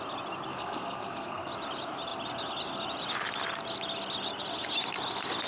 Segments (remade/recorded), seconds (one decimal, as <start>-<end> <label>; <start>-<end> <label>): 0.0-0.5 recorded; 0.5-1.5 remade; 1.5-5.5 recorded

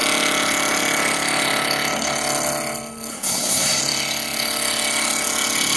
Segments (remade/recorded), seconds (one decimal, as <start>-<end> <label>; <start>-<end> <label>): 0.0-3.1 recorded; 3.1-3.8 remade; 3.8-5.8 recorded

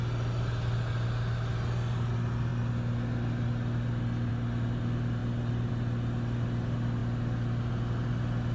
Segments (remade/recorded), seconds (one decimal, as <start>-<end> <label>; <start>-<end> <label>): 0.0-8.5 recorded

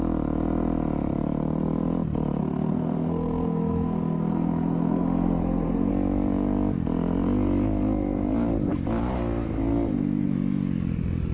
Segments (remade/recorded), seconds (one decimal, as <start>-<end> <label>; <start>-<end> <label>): 0.0-2.4 recorded; 2.4-5.9 remade; 5.9-11.3 recorded